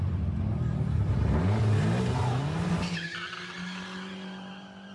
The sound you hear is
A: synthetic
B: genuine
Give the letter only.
B